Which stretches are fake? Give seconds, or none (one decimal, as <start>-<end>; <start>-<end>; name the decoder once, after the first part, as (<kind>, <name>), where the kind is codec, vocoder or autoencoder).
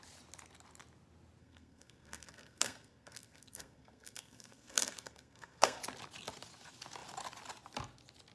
1.4-5.8 (codec, SNAC)